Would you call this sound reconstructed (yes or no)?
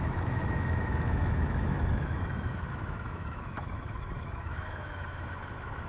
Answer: yes